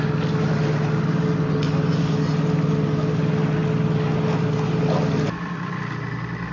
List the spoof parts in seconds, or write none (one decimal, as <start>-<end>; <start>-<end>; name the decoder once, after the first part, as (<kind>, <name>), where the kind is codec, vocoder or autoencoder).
none